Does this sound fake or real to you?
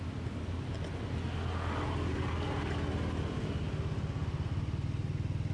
real